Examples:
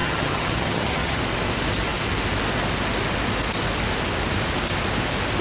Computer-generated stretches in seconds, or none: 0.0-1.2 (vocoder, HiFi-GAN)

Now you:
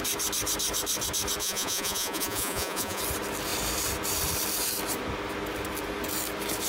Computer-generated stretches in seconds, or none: 1.4-3.0 (vocoder, Vocos)